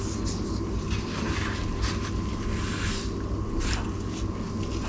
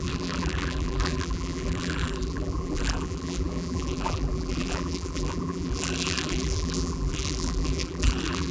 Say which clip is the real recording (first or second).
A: first